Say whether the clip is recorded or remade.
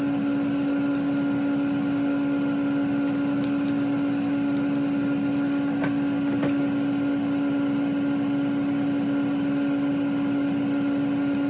recorded